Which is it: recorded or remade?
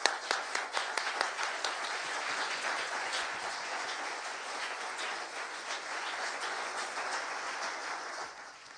remade